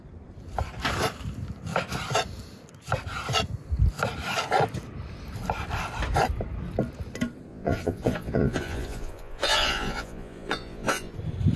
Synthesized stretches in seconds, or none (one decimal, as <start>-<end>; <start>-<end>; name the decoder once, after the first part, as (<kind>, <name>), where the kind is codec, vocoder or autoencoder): 7.5-11.1 (vocoder, Vocos)